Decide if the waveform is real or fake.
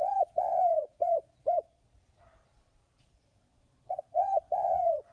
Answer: fake